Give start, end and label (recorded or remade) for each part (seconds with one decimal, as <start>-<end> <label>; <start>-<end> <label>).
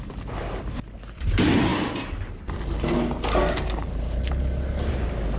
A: 0.0-5.4 recorded